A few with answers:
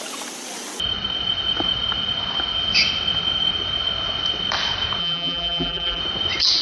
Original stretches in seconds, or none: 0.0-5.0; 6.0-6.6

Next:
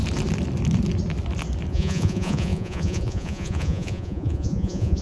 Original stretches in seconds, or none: 0.0-1.7

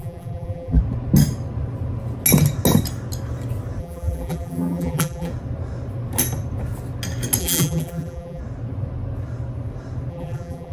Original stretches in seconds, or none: 0.8-3.8; 5.3-7.4; 8.4-10.1

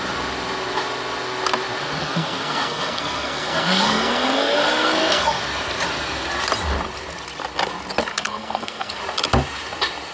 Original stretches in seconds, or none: 0.0-2.0; 5.4-8.1; 9.0-10.1

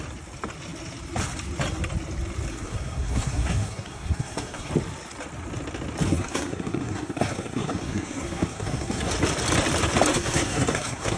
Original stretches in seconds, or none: 0.0-2.5; 4.7-6.1; 9.1-10.1

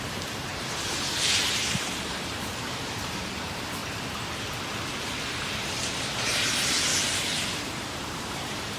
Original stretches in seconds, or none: 3.8-5.8; 6.9-7.7

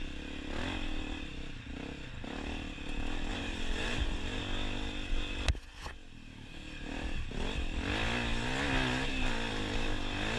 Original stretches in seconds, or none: 0.0-3.3; 4.4-10.4